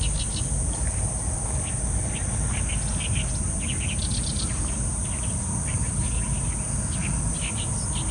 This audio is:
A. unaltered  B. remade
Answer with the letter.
A